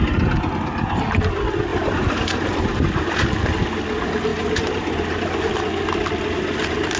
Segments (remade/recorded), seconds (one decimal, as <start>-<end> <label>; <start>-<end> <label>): 0.0-1.7 recorded; 1.7-2.8 remade; 2.8-4.3 recorded; 4.3-5.5 remade; 5.5-7.0 recorded